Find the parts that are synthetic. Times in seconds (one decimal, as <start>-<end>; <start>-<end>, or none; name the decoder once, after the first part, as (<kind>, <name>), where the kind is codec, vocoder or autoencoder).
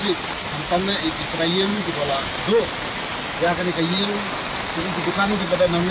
none